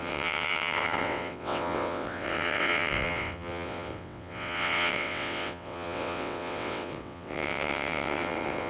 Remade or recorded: remade